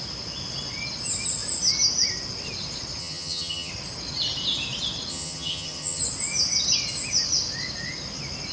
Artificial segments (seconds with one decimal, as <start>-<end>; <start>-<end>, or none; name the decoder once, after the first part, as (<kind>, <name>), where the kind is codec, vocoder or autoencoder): 3.0-3.7 (vocoder, HiFi-GAN); 5.1-6.0